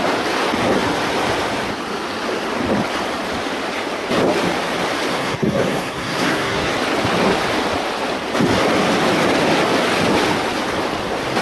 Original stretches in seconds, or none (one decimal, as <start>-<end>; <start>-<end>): 0.0-5.1; 6.7-11.4